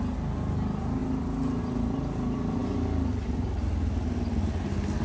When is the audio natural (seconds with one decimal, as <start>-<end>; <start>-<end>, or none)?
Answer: 0.0-5.0